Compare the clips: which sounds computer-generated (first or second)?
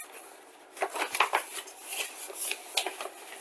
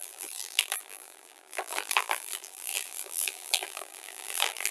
second